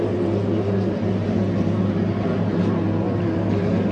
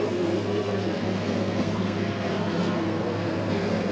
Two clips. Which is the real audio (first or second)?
first